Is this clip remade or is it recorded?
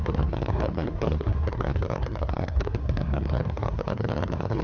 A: remade